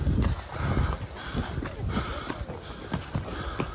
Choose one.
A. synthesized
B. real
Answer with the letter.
B